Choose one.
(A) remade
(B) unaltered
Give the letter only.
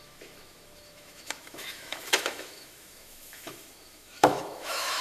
A